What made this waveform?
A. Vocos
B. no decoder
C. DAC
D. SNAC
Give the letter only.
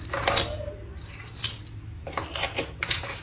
B